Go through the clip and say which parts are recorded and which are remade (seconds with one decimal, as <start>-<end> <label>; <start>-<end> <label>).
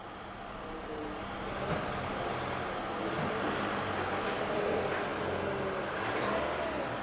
0.0-7.0 recorded